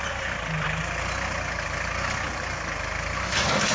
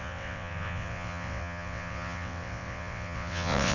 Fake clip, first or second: second